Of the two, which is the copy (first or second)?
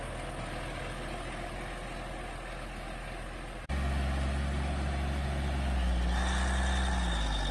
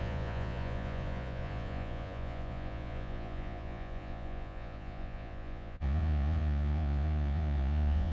second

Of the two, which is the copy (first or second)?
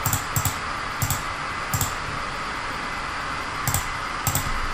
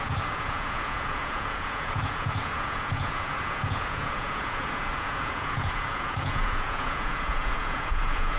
second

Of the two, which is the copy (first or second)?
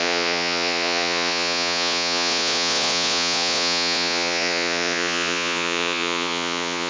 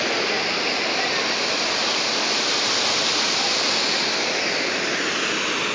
first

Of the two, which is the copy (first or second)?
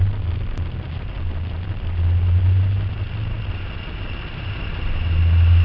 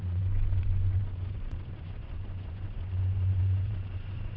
second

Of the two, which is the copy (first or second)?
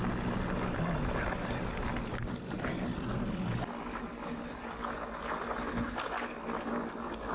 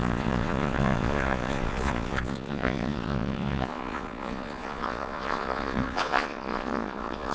second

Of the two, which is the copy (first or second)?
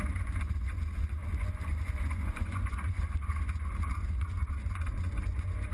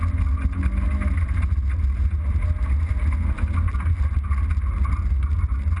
first